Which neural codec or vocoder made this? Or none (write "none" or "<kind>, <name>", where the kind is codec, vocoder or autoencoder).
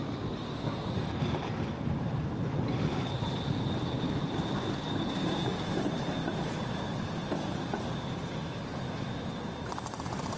none